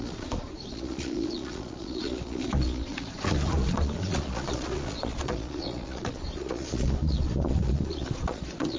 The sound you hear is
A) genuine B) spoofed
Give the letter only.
B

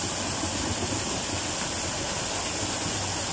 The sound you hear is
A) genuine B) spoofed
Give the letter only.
A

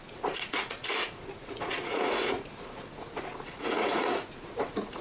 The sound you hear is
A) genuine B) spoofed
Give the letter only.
B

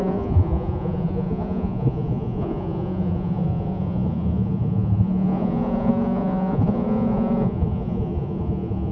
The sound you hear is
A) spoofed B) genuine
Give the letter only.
A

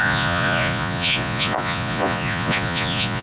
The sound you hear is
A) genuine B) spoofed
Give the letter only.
B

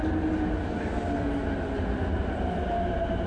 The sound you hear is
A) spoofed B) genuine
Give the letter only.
B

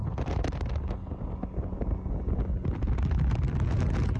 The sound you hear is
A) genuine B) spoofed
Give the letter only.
A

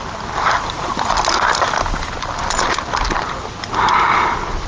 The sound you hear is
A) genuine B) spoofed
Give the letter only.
A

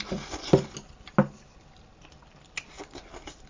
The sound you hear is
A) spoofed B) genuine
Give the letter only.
B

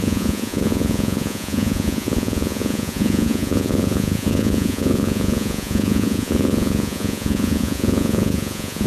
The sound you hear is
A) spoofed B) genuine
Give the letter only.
A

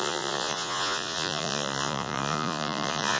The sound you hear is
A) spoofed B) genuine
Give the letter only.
A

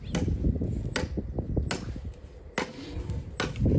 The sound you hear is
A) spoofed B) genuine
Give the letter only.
B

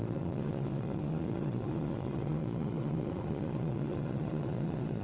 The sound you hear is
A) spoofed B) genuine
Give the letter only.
A